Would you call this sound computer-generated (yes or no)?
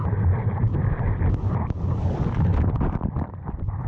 no